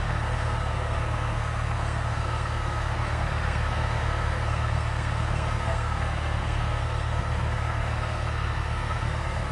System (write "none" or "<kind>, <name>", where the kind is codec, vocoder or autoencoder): codec, SNAC